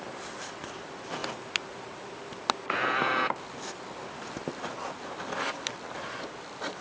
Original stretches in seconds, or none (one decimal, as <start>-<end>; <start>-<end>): 0.0-6.8